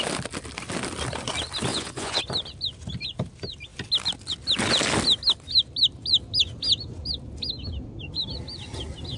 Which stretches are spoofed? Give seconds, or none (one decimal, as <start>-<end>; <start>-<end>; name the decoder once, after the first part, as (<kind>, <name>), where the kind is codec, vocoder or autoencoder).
1.7-2.2 (vocoder, Vocos)